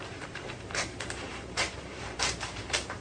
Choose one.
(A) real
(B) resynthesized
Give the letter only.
B